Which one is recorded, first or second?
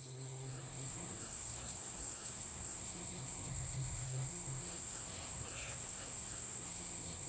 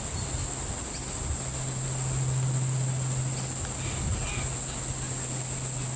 second